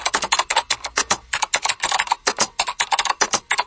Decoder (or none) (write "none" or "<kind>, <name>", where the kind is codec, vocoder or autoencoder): none